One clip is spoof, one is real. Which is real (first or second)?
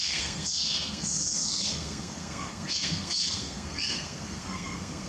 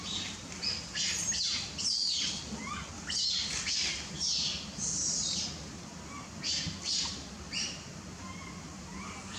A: second